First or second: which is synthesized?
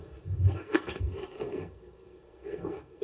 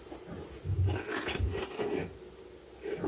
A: first